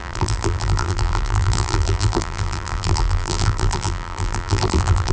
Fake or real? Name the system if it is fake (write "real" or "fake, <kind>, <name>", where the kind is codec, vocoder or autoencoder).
fake, vocoder, BigVGAN v2